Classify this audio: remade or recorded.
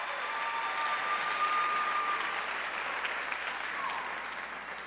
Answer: recorded